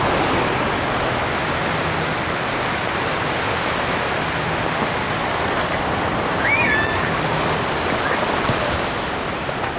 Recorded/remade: recorded